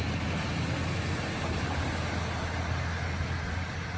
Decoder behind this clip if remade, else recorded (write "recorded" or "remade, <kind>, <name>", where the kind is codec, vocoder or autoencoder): recorded